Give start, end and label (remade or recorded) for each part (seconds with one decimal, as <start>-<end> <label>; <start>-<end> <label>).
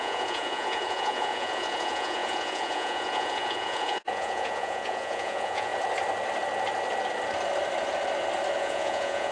0.0-5.7 remade; 5.7-8.6 recorded; 8.6-9.3 remade